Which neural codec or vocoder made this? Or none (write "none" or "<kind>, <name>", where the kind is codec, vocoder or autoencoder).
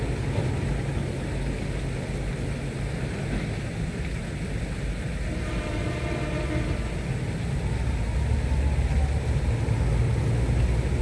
none